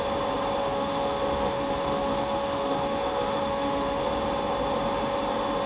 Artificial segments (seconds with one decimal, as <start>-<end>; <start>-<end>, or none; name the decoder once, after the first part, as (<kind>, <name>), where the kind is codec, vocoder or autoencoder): 0.6-4.0 (autoencoder, DAC-VAE)